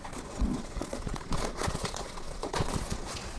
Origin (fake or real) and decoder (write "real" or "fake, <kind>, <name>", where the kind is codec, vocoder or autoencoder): fake, vocoder, Vocos